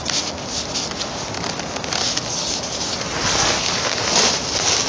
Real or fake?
real